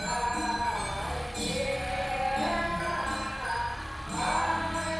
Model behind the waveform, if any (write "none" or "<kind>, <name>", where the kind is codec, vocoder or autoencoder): none